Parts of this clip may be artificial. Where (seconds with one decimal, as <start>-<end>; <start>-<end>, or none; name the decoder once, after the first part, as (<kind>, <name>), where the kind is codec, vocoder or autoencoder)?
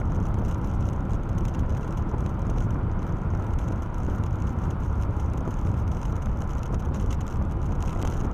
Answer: 1.7-6.3 (vocoder, BigVGAN v2)